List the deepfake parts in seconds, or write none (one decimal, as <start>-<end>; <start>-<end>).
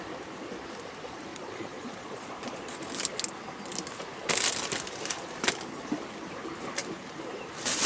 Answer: 1.3-2.8